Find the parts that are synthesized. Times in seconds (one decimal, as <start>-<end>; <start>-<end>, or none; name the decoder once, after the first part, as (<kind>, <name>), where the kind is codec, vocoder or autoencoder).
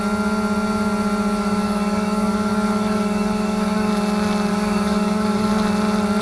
1.3-3.9 (codec, DAC); 4.5-5.5